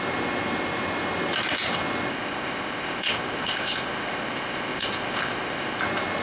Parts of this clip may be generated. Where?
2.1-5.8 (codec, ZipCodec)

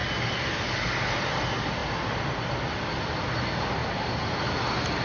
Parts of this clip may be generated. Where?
none

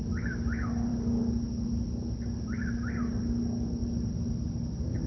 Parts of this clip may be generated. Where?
none

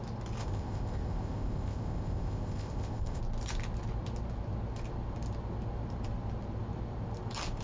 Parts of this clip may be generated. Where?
0.4-3.2 (codec, ZipCodec)

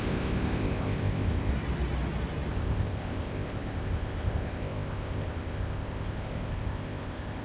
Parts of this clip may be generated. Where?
0.0-1.5 (codec, ZipCodec); 2.5-7.4

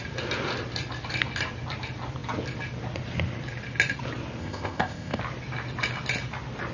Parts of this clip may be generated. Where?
4.4-5.2 (codec, ZipCodec)